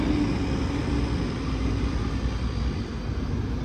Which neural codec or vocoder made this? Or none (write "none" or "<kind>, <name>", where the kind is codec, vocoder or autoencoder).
none